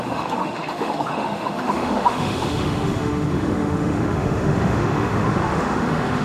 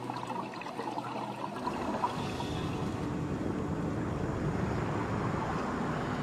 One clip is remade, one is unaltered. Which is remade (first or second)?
first